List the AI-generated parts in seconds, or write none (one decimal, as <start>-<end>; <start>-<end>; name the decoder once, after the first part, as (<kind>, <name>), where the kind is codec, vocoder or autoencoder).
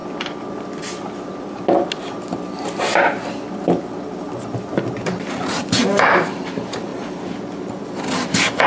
none